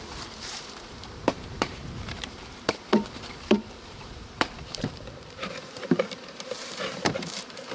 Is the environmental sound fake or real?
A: fake